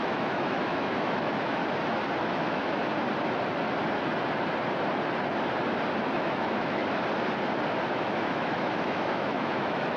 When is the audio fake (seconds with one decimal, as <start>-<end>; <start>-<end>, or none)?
0.0-1.6; 2.2-2.8; 6.0-6.8; 7.9-10.0